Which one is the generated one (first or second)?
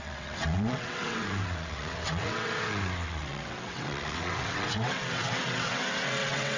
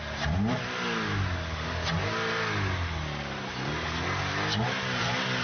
first